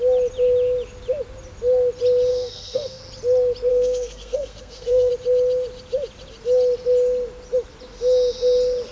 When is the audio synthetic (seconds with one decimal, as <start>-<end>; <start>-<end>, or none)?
2.3-3.0; 3.7-5.1